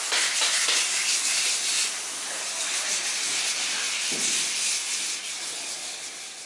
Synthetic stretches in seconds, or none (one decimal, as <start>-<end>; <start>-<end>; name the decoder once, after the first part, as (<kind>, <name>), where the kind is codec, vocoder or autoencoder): none